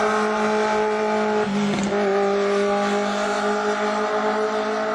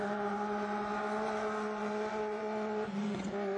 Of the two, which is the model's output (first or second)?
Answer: second